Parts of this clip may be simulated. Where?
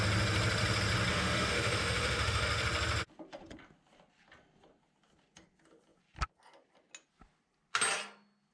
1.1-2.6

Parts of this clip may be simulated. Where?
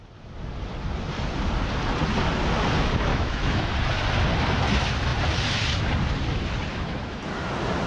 3.1-3.7; 6.7-7.3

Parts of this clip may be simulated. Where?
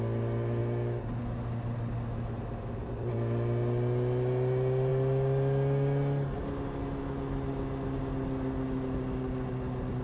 none